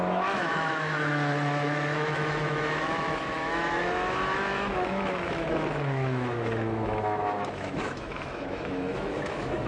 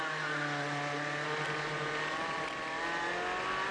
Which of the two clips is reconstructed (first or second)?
first